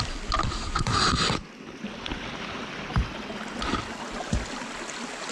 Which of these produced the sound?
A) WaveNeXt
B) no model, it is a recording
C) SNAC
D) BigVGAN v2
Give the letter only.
B